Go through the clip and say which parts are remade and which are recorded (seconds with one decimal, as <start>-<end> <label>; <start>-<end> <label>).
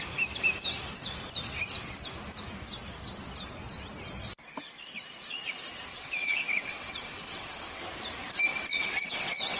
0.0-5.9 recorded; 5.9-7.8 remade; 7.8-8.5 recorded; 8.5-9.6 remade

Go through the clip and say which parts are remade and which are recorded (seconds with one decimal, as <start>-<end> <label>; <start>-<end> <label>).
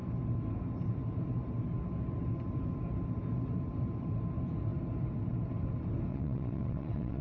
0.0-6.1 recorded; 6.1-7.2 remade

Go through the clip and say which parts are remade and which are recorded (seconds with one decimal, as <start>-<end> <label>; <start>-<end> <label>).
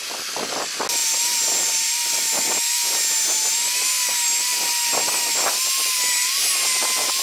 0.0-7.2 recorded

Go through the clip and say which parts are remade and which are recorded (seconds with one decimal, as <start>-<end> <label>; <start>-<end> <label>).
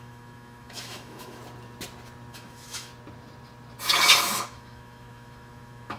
0.0-1.4 remade; 1.4-2.3 recorded; 2.3-2.9 remade; 2.9-4.2 recorded; 4.2-6.0 remade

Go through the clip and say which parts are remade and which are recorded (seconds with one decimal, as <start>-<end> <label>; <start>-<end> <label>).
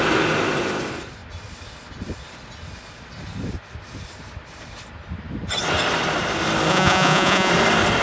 0.0-6.7 recorded; 6.7-7.5 remade; 7.5-8.0 recorded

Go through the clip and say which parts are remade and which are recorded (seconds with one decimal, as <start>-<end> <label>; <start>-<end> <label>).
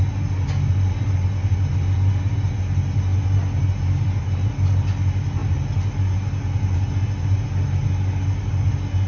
0.0-9.1 recorded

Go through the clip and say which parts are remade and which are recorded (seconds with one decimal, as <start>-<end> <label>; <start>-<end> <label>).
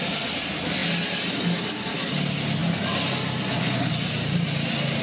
0.0-5.0 recorded